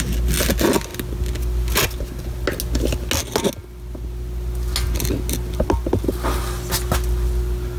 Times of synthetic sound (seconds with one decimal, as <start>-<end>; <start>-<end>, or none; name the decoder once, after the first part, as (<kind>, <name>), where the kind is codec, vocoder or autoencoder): none